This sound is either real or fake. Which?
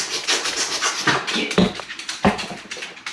fake